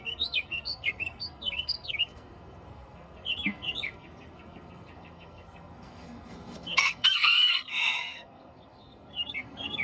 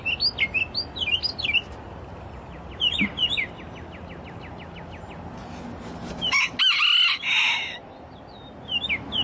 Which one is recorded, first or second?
second